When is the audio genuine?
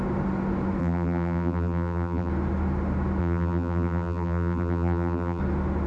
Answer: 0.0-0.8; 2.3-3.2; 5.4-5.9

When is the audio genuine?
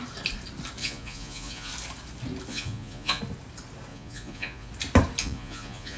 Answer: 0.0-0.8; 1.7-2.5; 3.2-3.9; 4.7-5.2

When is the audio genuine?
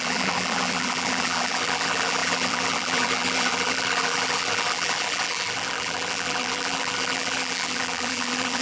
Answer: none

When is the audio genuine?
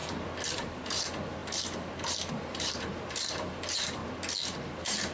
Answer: 0.0-0.5; 4.0-4.6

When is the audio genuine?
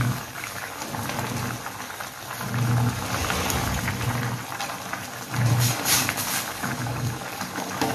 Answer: 0.8-5.5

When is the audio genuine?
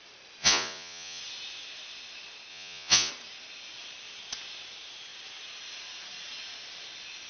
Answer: 0.0-0.4; 1.2-2.5; 3.1-7.3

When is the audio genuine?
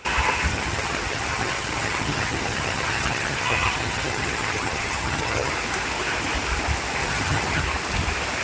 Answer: 0.0-0.5; 5.5-7.0; 7.6-8.4